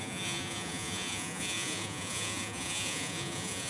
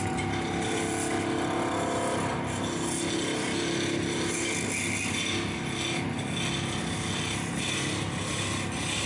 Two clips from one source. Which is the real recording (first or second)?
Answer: second